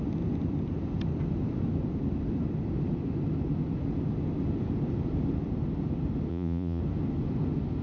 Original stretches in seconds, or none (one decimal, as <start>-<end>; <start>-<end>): 0.0-6.3; 6.8-7.8